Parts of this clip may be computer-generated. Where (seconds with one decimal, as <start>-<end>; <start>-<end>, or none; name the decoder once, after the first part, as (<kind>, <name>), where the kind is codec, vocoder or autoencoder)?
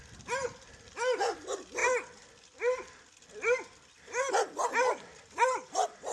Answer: none